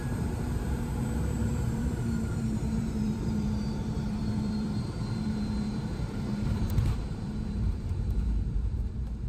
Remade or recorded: remade